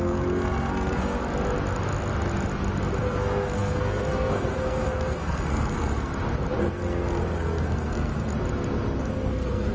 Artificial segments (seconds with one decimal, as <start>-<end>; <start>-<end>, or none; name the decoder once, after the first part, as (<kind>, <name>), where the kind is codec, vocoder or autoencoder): 0.0-1.2 (codec, SNAC); 3.0-6.1; 6.6-8.3; 9.0-9.7